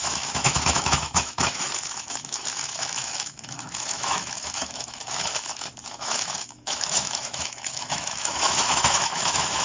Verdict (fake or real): fake